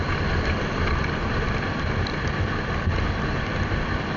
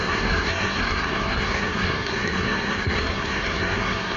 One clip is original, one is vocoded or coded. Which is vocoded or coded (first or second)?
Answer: second